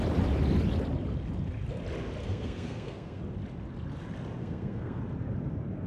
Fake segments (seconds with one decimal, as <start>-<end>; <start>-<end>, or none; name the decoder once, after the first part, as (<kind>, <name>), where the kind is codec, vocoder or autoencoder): 2.2-3.2 (codec, SNAC); 4.4-5.0